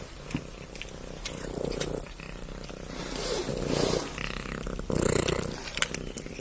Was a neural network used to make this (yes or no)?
no